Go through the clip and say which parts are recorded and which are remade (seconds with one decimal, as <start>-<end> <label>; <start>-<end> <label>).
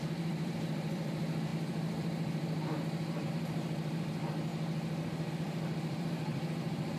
0.0-4.5 remade; 4.5-5.3 recorded; 5.3-7.0 remade